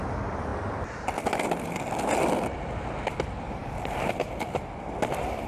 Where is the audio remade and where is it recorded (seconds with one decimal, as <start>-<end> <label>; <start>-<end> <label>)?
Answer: 0.0-5.5 recorded